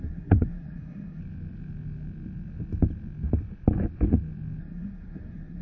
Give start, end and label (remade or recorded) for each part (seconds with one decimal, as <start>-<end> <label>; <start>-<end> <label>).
0.0-1.2 remade; 1.2-4.6 recorded; 4.6-5.6 remade